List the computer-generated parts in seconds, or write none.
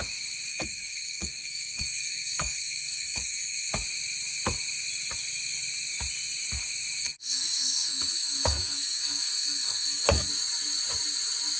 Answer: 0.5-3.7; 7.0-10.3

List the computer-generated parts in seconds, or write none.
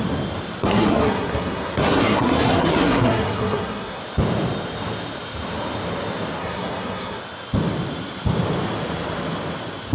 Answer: 0.6-4.0; 6.4-7.2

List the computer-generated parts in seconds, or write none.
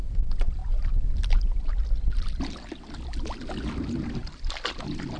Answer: 4.2-5.2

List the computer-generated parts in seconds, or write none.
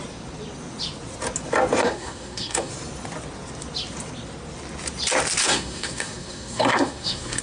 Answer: 1.8-2.7; 5.4-7.4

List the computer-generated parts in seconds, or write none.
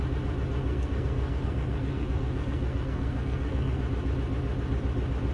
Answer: 0.6-3.8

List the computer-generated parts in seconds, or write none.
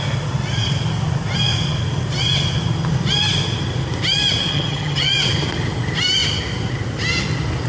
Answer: 4.4-5.1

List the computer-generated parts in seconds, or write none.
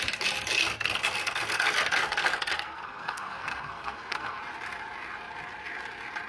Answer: 0.6-4.4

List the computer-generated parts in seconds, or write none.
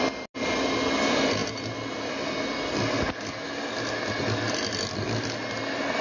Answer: none